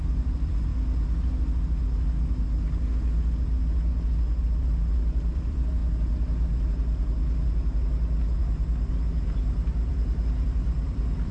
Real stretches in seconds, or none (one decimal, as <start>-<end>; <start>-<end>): 0.7-4.4; 5.8-8.9